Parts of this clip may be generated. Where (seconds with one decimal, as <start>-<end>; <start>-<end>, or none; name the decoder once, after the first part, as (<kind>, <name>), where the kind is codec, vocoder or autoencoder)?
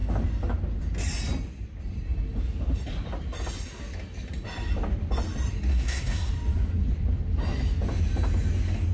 5.7-6.3 (codec, SNAC)